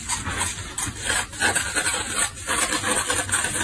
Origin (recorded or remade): recorded